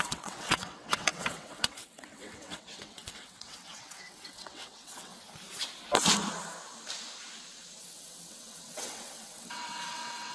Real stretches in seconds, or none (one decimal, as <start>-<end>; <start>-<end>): 5.1-7.8